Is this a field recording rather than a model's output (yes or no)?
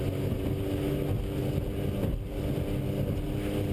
yes